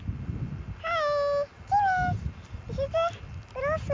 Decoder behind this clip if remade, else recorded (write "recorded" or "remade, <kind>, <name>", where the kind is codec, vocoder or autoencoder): recorded